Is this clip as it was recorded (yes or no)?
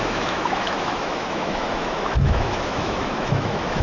no